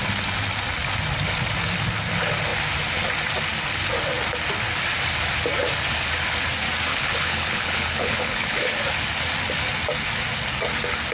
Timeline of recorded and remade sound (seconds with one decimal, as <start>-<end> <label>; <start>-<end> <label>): 0.0-6.9 recorded; 6.9-8.6 remade; 8.6-11.1 recorded